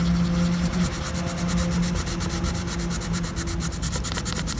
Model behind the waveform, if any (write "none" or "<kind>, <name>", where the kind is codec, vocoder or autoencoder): none